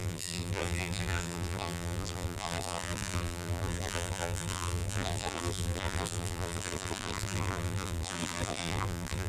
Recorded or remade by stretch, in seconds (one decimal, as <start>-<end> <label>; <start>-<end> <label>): 0.0-9.3 remade